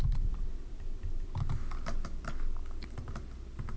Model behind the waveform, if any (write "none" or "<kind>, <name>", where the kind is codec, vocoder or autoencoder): none